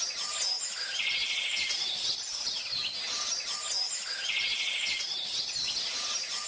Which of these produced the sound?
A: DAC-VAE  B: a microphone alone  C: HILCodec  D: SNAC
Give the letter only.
B